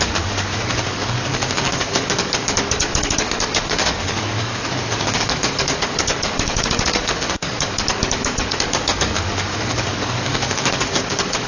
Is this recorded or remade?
remade